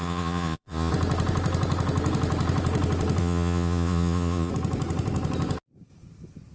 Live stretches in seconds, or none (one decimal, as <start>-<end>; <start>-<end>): 0.9-3.2; 4.5-6.5